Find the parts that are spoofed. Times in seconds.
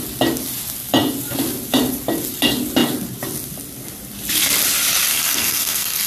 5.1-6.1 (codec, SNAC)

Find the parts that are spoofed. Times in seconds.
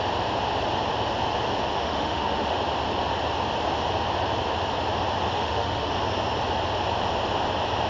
1.7-2.6 (autoencoder, DAC-VAE); 5.2-5.9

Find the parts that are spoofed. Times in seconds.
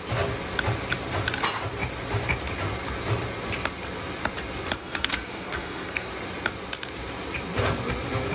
4.8-6.1 (codec, SNAC)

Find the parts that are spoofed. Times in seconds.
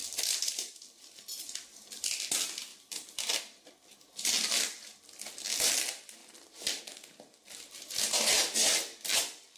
0.0-1.0 (vocoder, BigVGAN v2); 2.7-4.0; 6.2-6.8